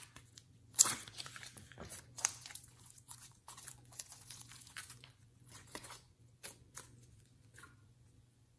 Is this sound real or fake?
fake